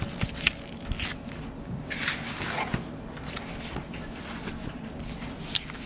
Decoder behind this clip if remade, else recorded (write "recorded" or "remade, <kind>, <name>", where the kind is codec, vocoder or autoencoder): recorded